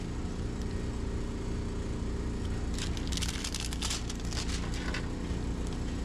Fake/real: real